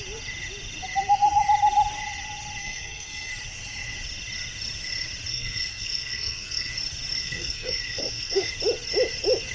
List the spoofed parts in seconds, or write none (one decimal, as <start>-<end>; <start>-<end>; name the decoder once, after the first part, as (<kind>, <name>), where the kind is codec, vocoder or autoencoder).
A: 2.6-3.3 (codec, SNAC); 5.3-6.7; 7.2-8.5